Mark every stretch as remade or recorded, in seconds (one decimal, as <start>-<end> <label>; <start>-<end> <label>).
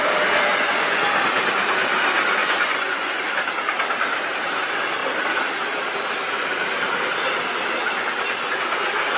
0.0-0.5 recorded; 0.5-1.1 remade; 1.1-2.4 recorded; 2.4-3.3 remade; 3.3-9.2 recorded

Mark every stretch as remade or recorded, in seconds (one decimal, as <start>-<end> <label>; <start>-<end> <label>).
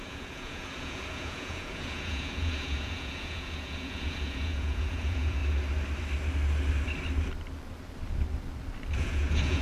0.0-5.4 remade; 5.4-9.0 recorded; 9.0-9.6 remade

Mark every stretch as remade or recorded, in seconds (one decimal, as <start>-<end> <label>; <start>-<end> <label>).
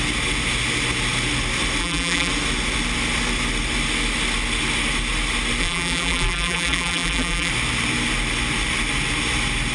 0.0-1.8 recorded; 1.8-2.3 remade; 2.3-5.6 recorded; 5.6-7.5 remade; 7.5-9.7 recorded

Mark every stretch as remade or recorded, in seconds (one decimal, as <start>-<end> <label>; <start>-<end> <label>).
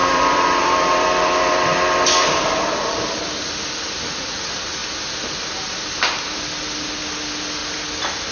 0.0-4.2 remade; 4.2-7.6 recorded; 7.6-8.3 remade